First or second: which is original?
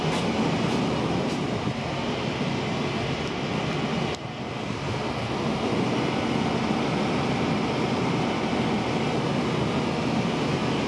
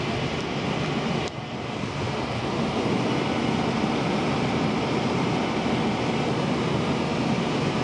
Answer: first